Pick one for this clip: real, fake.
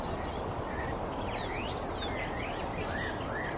real